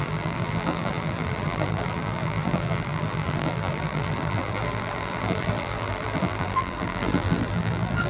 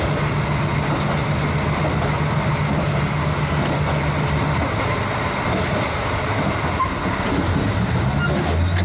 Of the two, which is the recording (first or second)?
second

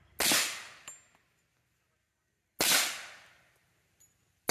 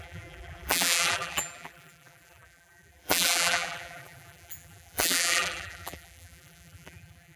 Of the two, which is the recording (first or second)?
first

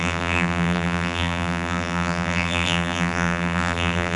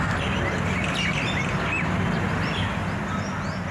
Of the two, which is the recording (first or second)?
second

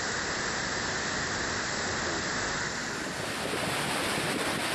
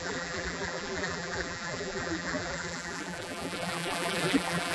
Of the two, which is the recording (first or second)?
first